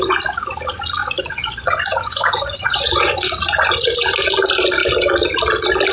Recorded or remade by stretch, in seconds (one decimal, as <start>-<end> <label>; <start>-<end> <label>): 0.0-1.0 recorded; 1.0-3.3 remade; 3.3-5.9 recorded